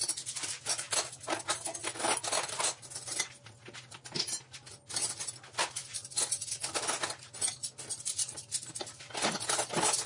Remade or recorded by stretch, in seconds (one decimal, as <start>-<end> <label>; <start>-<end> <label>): 0.0-10.1 recorded

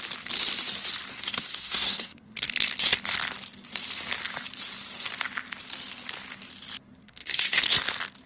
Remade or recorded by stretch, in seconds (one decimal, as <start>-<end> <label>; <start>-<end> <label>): 0.0-1.1 recorded; 1.1-2.5 remade; 2.5-7.0 recorded; 7.0-7.6 remade; 7.6-8.3 recorded